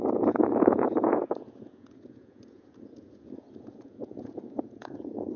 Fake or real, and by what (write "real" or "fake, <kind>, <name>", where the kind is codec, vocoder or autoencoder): fake, vocoder, Vocos